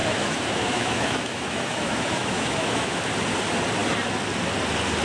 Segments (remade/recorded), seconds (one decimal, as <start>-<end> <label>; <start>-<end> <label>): 0.0-3.0 remade; 3.0-5.0 recorded